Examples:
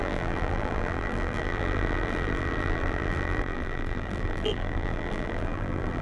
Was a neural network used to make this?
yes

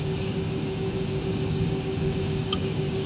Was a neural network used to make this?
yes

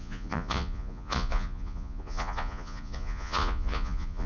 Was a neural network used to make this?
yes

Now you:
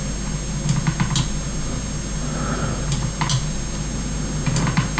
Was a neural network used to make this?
no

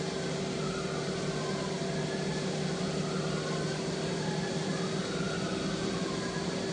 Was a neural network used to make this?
no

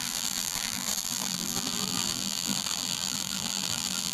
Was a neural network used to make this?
yes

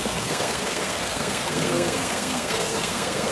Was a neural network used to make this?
yes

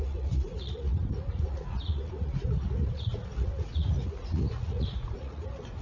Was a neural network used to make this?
yes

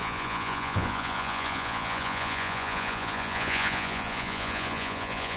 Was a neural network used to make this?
yes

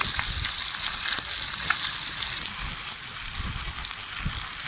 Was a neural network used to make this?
no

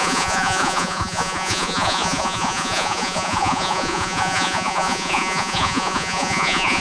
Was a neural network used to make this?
yes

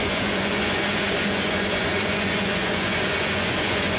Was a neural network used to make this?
yes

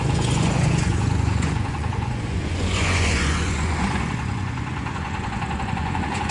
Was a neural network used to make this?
yes